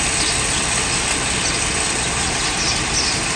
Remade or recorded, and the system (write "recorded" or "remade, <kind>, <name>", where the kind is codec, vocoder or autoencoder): recorded